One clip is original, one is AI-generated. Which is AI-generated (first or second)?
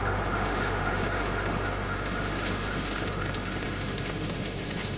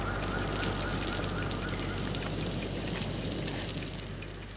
first